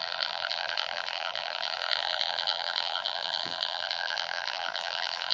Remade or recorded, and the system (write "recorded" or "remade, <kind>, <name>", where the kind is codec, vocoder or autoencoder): remade, vocoder, BigVGAN v2